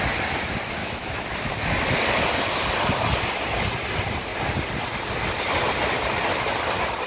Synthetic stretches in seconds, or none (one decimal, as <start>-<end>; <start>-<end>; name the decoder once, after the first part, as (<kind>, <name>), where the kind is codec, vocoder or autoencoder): 0.8-1.7 (autoencoder, DAC-VAE)